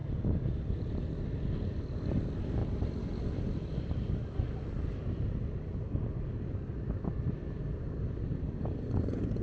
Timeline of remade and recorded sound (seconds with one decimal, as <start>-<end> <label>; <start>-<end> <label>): 0.0-9.4 recorded